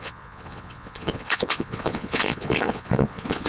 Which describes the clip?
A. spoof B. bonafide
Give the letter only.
A